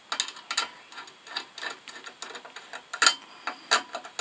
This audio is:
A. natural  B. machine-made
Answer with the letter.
A